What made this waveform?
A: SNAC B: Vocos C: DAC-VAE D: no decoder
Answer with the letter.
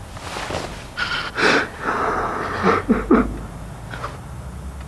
D